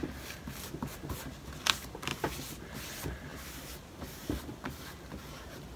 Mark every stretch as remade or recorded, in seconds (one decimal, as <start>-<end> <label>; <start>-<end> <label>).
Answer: 0.0-5.8 recorded